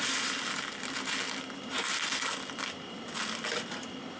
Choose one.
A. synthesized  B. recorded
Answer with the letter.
B